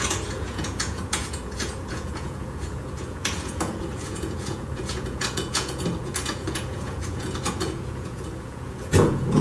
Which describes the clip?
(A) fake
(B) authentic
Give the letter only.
A